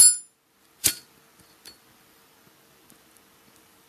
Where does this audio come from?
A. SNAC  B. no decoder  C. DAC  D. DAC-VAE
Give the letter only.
B